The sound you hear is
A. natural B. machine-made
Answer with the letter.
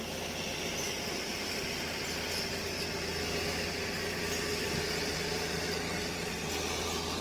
A